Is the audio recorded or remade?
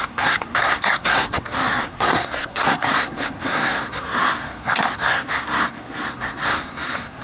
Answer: remade